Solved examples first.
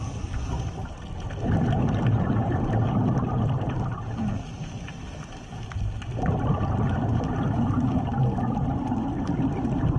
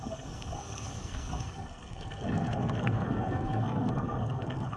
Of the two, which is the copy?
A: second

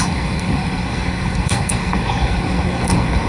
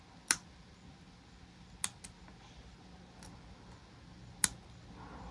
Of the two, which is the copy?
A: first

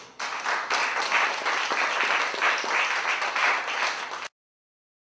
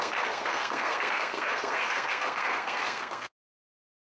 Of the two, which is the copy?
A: second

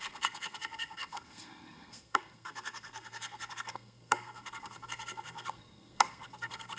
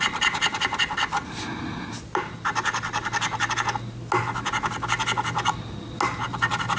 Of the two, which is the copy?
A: first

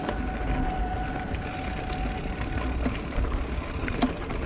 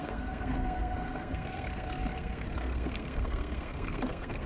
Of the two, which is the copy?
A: second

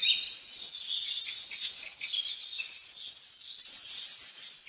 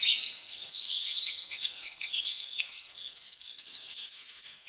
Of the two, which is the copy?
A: second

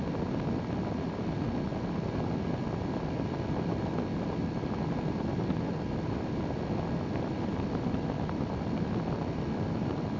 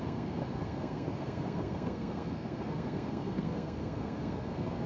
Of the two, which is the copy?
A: second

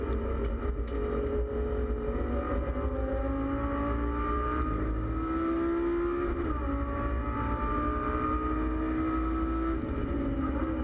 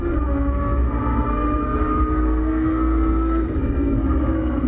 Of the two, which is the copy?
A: second